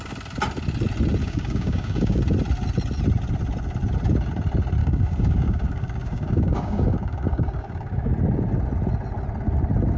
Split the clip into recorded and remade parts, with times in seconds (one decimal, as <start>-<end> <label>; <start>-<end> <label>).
0.0-1.2 recorded; 1.2-2.2 remade; 2.2-4.8 recorded; 4.8-8.1 remade; 8.1-10.0 recorded